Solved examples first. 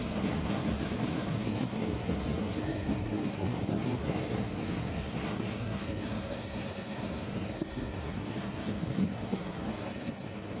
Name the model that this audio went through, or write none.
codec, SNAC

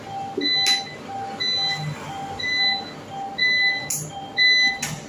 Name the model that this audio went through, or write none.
none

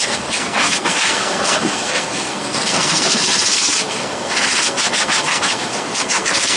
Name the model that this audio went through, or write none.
codec, SNAC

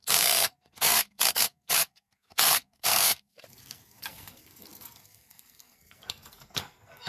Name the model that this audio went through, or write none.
codec, SNAC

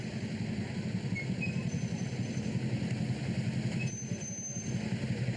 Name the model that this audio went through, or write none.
none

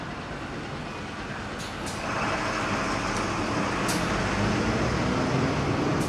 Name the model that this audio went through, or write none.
none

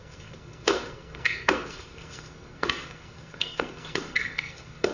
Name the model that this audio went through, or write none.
codec, SNAC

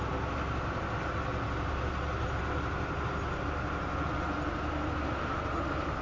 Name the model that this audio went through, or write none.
none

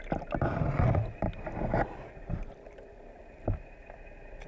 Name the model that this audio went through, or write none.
none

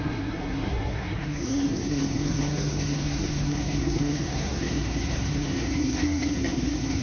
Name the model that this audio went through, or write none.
codec, SNAC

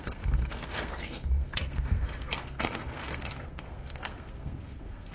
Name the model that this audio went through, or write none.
codec, SNAC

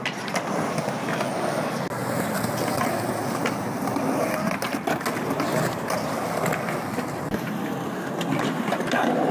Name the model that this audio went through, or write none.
none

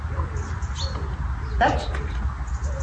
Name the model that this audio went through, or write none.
none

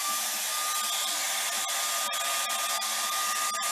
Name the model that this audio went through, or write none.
none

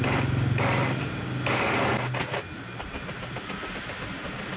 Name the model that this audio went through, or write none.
none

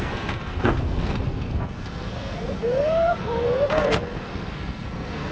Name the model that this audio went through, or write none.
codec, SNAC